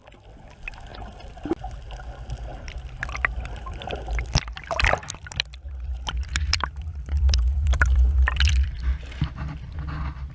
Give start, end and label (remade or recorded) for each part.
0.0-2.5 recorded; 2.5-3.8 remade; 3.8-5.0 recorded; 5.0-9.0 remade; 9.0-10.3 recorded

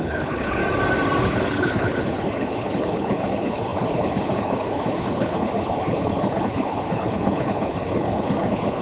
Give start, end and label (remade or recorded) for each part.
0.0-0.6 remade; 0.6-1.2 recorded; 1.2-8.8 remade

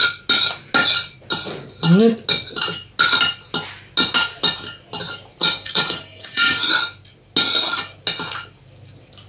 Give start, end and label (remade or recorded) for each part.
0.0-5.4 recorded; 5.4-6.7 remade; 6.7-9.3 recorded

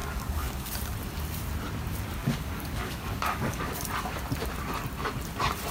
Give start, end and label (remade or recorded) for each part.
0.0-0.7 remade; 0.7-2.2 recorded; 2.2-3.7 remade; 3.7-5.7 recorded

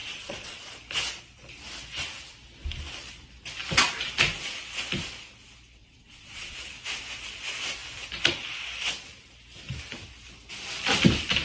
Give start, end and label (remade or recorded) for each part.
0.0-0.6 remade; 0.6-5.8 recorded; 5.8-6.7 remade; 6.7-11.4 recorded

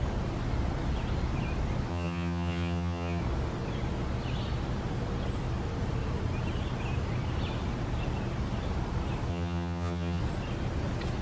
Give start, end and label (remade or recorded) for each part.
0.0-1.9 recorded; 1.9-3.2 remade; 3.2-9.3 recorded; 9.3-10.2 remade; 10.2-11.2 recorded

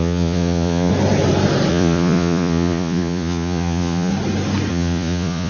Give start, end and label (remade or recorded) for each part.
0.0-0.9 remade; 0.9-1.7 recorded; 1.7-4.1 remade; 4.1-4.7 recorded; 4.7-5.5 remade

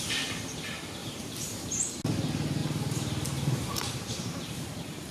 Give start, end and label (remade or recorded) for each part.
0.0-1.0 recorded; 1.0-1.9 remade; 1.9-2.6 recorded; 2.6-4.4 remade; 4.4-5.1 recorded